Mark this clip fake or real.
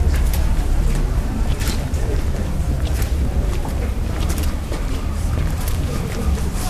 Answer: fake